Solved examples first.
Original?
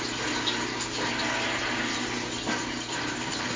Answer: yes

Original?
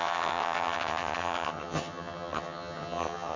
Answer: no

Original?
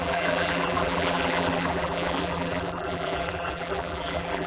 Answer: no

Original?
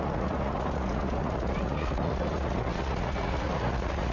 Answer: no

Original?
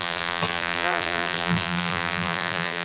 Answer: no